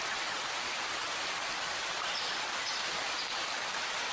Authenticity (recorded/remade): recorded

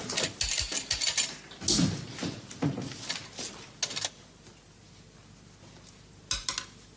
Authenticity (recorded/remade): recorded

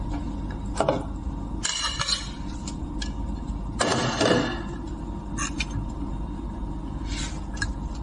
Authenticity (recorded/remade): recorded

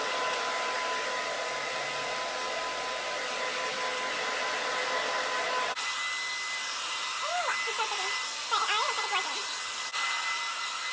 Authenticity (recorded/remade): recorded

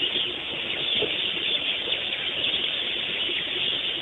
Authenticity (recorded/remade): recorded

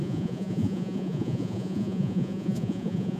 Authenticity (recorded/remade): remade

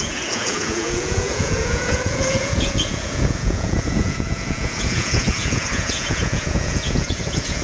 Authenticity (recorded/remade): remade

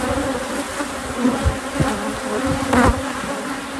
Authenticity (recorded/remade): recorded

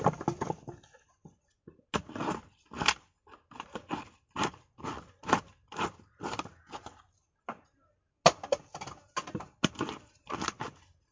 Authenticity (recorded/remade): recorded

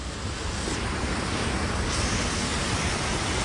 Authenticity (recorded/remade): recorded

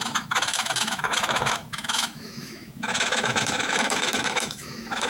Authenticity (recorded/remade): remade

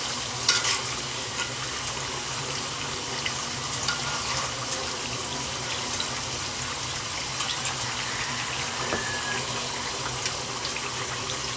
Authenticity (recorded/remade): recorded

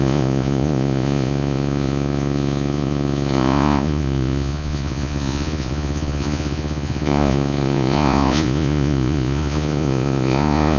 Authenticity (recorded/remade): remade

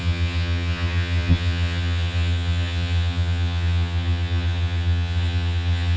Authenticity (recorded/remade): remade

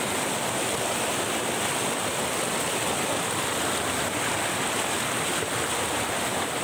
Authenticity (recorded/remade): recorded